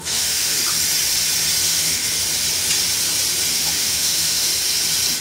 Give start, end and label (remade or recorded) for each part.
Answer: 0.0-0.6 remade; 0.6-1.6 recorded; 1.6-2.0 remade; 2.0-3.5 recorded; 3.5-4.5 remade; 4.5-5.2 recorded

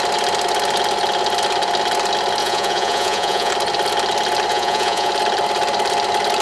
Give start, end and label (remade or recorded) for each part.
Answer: 0.0-2.4 recorded; 2.4-3.5 remade; 3.5-4.5 recorded; 4.5-5.1 remade; 5.1-6.4 recorded

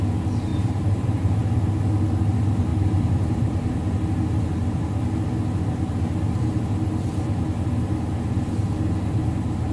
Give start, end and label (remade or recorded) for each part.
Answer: 0.0-0.5 recorded; 0.5-1.4 remade; 1.4-2.7 recorded; 2.7-3.8 remade; 3.8-9.7 recorded